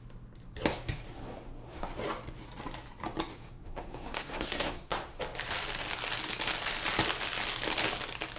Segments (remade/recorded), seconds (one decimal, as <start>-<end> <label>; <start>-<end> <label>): 0.0-0.7 recorded; 0.7-1.8 remade; 1.8-3.3 recorded; 3.3-5.2 remade; 5.2-8.4 recorded